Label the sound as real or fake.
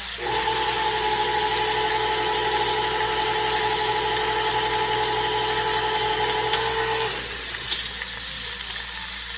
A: real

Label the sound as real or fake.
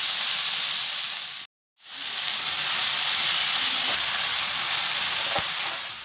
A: real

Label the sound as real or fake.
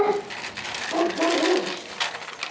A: real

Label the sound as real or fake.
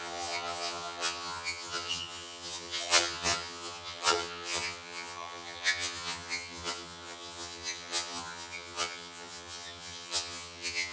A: fake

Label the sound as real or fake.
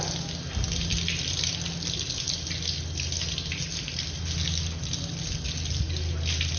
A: real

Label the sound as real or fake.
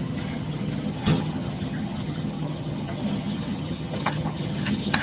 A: fake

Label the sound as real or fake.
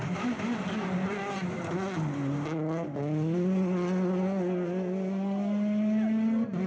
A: real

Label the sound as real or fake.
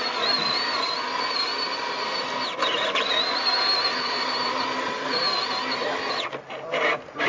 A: real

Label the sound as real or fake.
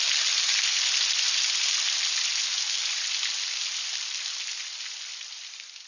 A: real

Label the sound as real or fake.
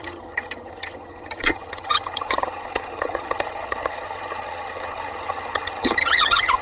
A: fake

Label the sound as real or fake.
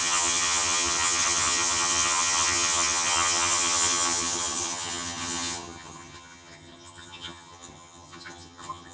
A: fake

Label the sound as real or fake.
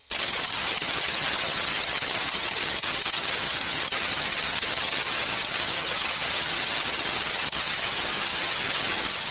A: fake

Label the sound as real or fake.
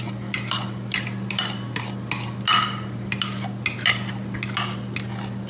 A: real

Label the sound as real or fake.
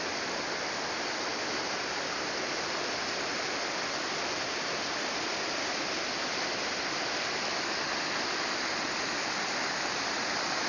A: real